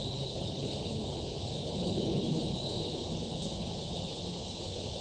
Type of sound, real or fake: fake